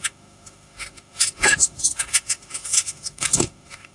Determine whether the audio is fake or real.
fake